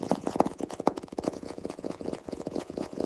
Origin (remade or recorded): remade